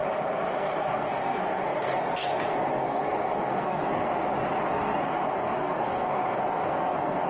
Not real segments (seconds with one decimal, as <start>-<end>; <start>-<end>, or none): 0.5-4.1; 4.7-7.3

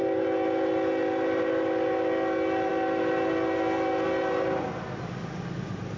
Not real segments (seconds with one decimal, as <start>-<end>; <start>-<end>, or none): none